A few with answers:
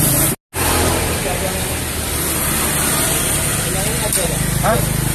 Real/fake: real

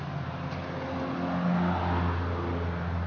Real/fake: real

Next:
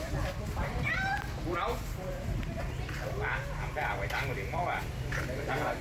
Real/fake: real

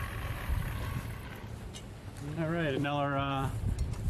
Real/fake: fake